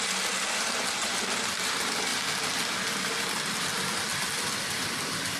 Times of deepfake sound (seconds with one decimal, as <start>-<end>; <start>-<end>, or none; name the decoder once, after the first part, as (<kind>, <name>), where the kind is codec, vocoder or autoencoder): none